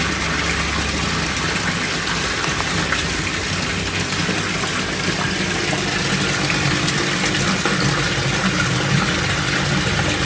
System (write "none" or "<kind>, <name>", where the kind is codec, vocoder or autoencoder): none